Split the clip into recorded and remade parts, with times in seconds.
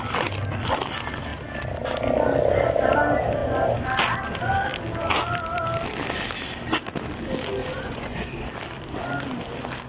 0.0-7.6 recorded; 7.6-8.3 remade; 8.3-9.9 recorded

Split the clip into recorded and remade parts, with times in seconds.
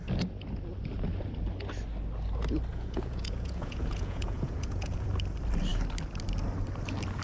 0.0-2.7 recorded; 2.7-5.1 remade; 5.1-7.2 recorded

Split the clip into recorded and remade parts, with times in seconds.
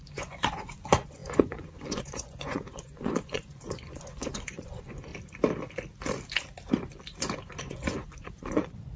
0.0-5.1 remade; 5.1-7.6 recorded; 7.6-9.0 remade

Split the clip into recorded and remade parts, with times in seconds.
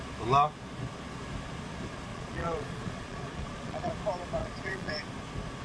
0.0-2.1 recorded; 2.1-3.9 remade; 3.9-4.4 recorded; 4.4-4.9 remade; 4.9-5.6 recorded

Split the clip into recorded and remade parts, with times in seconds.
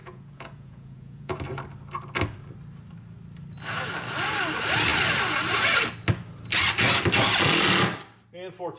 0.0-1.4 remade; 1.4-8.8 recorded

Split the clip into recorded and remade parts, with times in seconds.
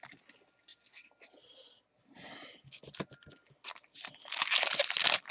0.0-5.3 recorded